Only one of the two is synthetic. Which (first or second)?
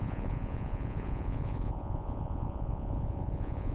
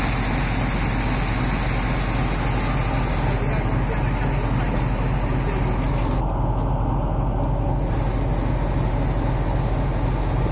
first